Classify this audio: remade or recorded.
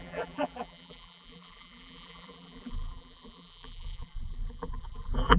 remade